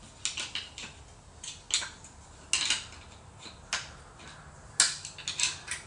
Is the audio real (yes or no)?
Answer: yes